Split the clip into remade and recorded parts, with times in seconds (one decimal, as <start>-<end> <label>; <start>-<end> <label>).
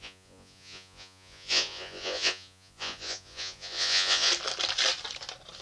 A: 0.0-4.3 remade; 4.3-5.6 recorded